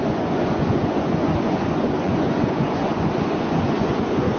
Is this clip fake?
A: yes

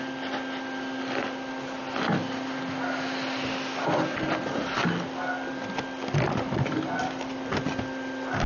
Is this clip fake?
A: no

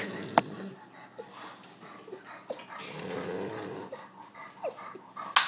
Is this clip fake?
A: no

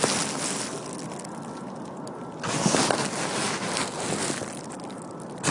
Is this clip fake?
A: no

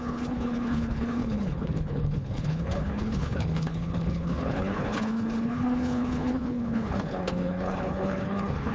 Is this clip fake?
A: yes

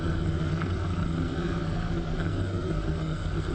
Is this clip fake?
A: yes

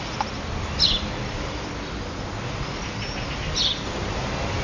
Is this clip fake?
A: no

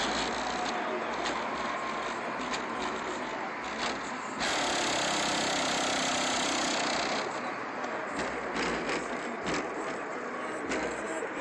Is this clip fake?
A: no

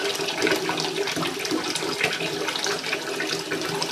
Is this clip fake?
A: no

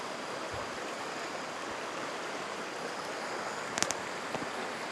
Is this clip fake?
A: no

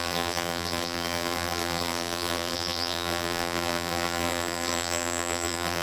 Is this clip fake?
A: yes